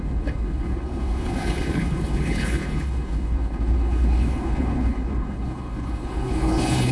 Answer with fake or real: fake